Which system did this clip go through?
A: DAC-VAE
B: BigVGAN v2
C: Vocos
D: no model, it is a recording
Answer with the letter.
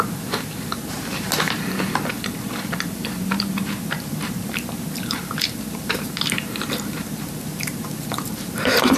B